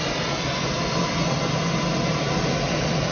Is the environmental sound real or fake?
real